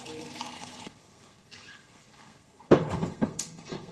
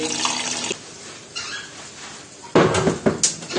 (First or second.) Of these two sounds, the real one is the second